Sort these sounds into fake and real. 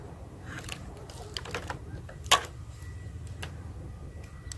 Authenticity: real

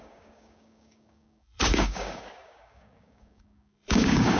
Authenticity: fake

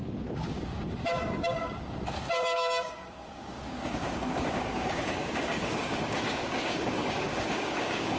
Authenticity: fake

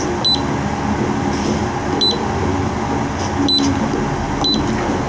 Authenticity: real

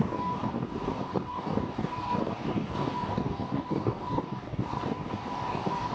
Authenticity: fake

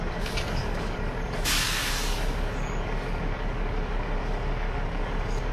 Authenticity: fake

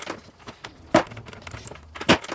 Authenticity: real